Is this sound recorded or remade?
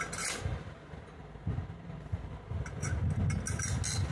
recorded